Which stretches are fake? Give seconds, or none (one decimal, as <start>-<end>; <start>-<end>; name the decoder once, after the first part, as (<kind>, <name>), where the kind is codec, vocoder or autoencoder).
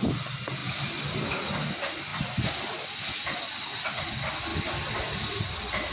0.6-1.3 (vocoder, BigVGAN v2)